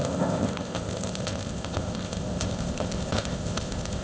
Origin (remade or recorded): remade